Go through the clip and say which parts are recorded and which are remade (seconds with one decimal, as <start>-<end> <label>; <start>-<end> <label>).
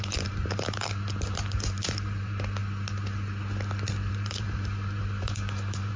0.0-2.6 remade; 2.6-4.1 recorded; 4.1-6.0 remade